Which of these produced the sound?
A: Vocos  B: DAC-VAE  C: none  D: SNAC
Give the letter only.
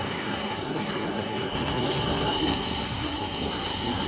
D